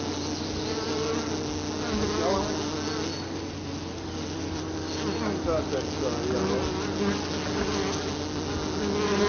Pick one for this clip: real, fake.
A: real